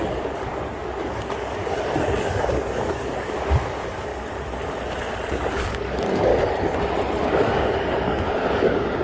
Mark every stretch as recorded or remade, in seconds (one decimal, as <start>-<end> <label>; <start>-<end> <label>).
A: 0.0-4.1 remade; 4.1-5.5 recorded; 5.5-6.3 remade; 6.3-7.2 recorded; 7.2-9.0 remade